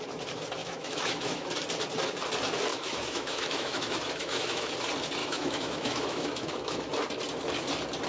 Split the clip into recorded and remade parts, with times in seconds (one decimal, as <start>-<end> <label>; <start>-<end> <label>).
0.0-0.6 recorded; 0.6-1.5 remade; 1.5-2.7 recorded; 2.7-4.7 remade; 4.7-5.2 recorded; 5.2-6.9 remade; 6.9-8.1 recorded